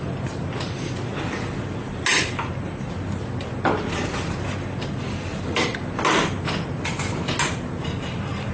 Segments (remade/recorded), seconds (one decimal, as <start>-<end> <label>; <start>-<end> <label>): 0.0-8.5 recorded